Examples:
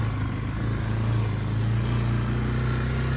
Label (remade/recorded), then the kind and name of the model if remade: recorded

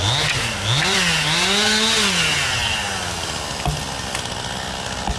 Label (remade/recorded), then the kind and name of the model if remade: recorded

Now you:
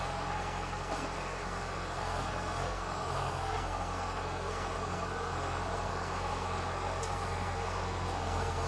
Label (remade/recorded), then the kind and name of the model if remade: remade, codec, SNAC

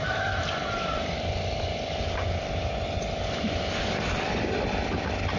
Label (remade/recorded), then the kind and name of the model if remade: recorded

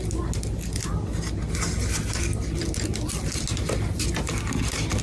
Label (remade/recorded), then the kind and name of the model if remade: recorded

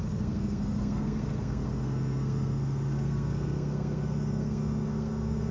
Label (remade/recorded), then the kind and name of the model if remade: remade, codec, SNAC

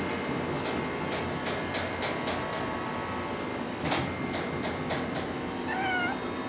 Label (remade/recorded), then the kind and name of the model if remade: recorded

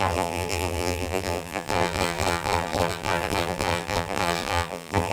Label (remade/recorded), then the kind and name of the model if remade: remade, vocoder, BigVGAN v2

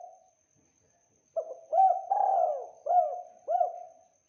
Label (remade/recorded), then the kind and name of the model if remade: recorded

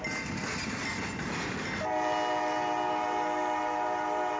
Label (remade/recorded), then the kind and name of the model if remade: recorded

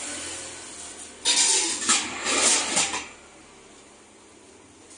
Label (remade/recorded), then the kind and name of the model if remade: recorded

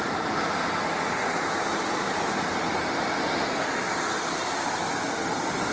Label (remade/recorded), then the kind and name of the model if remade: recorded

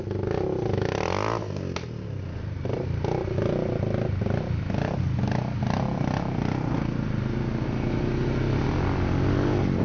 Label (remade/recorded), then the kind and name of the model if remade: recorded